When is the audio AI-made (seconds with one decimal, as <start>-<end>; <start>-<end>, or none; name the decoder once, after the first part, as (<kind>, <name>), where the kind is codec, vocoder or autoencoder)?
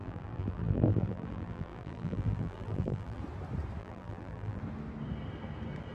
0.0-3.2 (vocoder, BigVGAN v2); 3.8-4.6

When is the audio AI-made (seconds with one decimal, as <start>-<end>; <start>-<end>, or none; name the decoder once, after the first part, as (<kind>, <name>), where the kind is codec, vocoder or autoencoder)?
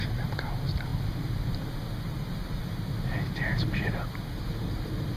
none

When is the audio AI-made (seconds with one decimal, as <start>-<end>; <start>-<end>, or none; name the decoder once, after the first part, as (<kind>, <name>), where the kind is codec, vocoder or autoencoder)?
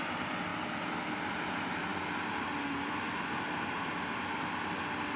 0.0-1.9 (vocoder, BigVGAN v2)